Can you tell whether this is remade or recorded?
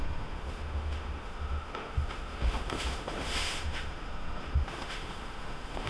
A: remade